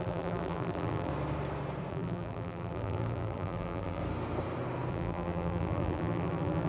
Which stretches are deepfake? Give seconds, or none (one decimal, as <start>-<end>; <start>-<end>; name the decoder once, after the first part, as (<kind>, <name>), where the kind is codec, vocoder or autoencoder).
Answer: 0.0-1.1 (vocoder, BigVGAN v2); 1.9-4.0; 4.9-6.7